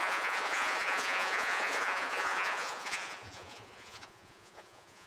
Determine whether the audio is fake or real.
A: fake